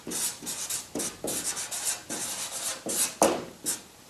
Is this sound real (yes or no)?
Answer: yes